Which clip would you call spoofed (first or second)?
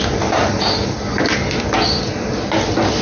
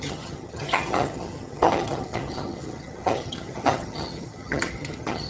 second